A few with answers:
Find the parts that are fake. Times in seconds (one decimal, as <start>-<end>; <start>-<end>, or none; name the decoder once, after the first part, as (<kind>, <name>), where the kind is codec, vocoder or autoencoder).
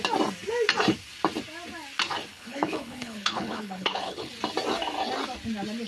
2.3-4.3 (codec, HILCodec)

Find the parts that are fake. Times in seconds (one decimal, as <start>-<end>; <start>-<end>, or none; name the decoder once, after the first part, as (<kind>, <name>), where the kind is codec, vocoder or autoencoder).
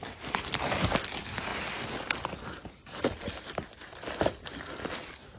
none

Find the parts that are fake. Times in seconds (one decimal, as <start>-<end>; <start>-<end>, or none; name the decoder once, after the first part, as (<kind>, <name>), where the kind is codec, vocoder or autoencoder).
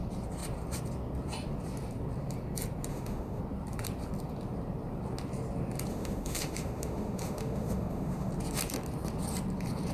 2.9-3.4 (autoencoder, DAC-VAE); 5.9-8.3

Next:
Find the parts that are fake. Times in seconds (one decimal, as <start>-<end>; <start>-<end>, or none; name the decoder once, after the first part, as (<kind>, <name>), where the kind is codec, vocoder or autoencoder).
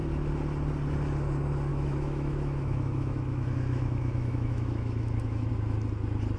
1.7-5.5 (autoencoder, DAC-VAE)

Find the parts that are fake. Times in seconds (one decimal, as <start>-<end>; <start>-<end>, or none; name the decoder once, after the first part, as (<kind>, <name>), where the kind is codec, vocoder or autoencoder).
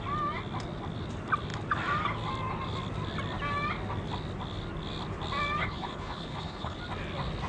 5.6-6.8 (codec, HILCodec)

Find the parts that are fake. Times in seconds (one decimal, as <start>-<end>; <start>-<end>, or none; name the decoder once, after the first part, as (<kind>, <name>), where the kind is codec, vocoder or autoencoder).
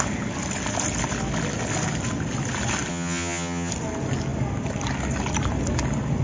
2.9-3.7 (vocoder, HiFi-GAN)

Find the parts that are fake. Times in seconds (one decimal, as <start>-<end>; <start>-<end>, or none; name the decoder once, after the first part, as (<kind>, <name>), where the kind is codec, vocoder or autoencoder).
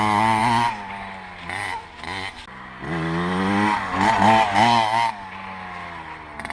none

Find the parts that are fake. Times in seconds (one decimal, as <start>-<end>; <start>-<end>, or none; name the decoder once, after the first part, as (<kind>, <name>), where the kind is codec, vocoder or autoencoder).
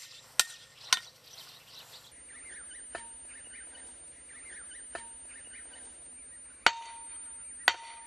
none